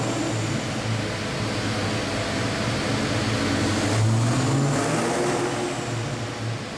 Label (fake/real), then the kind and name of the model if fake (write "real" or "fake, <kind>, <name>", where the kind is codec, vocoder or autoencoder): real